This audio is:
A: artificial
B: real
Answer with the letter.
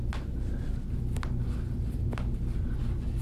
B